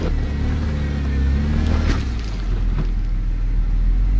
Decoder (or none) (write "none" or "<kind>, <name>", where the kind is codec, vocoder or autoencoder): none